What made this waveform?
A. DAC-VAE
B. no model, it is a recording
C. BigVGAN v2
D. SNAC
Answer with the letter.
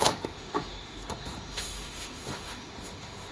A